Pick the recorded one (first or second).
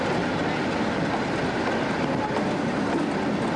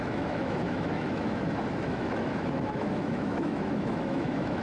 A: first